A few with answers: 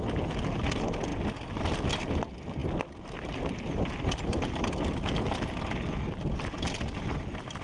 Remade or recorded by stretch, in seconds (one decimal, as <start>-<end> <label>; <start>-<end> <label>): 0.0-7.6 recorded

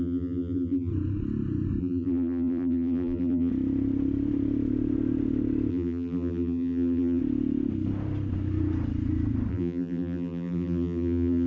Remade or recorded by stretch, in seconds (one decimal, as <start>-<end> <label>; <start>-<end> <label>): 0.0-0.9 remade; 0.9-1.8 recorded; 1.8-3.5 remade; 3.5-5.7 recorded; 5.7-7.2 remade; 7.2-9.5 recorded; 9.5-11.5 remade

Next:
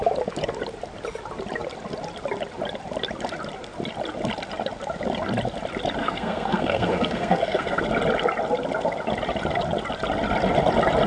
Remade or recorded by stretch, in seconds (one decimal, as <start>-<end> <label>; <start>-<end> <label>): 0.0-6.0 recorded; 6.0-7.8 remade; 7.8-11.1 recorded